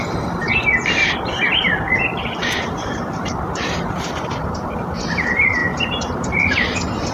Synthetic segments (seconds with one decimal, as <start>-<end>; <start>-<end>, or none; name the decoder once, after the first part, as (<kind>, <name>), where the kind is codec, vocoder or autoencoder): 0.0-7.1 (vocoder, BigVGAN v2)